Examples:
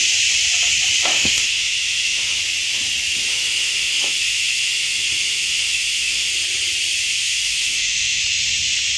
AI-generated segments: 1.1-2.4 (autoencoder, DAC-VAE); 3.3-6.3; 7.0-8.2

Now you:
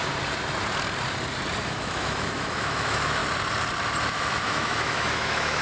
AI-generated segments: 1.6-3.2 (autoencoder, DAC-VAE); 4.1-5.6

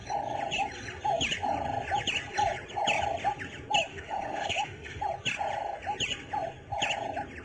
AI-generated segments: 3.9-5.0 (autoencoder, DAC-VAE)

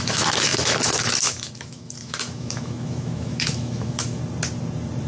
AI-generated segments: 0.0-4.2 (autoencoder, DAC-VAE)

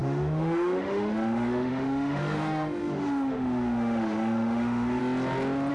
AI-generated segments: 0.0-5.0 (autoencoder, DAC-VAE)

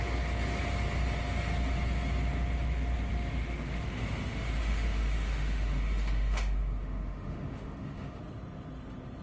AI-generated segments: 3.1-8.2 (autoencoder, DAC-VAE)